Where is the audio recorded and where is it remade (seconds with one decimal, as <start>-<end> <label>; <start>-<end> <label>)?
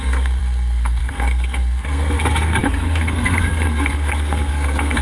0.0-5.0 remade